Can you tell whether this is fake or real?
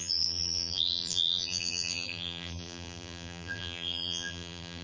fake